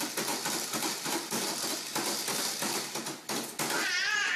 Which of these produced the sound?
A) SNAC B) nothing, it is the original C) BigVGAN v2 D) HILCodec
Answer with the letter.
B